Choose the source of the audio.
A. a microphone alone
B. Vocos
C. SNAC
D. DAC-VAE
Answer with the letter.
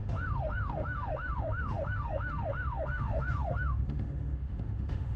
D